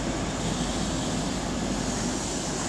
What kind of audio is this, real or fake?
real